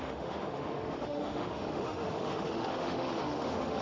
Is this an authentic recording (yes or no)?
no